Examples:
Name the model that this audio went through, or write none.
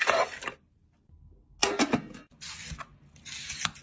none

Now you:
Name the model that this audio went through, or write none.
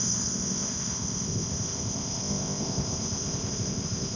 codec, ZipCodec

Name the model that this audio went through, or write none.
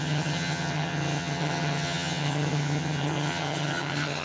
vocoder, HiFi-GAN